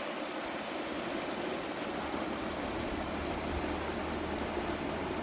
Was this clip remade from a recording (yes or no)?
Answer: no